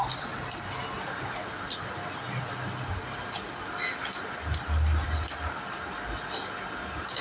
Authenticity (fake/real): real